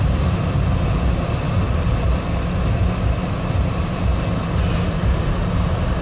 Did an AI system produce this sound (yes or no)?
no